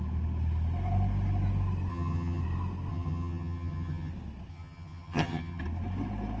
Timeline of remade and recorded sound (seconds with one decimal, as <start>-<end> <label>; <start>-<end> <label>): 0.0-1.9 recorded; 1.9-2.4 remade; 2.4-2.9 recorded; 2.9-4.1 remade; 4.1-4.5 recorded; 4.5-5.6 remade; 5.6-6.4 recorded